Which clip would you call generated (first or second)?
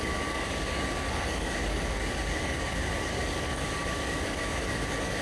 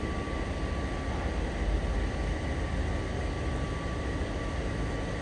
first